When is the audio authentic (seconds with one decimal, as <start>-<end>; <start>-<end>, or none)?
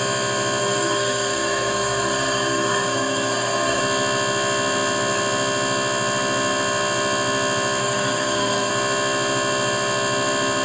0.0-0.6; 3.8-7.8; 8.7-10.6